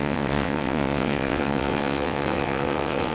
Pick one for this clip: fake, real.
fake